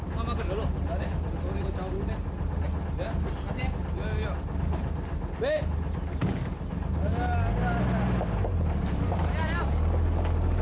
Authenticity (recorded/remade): recorded